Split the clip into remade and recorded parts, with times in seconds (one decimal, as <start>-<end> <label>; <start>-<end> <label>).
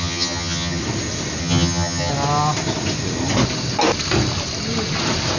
0.0-0.8 remade; 0.8-1.4 recorded; 1.4-2.1 remade; 2.1-5.4 recorded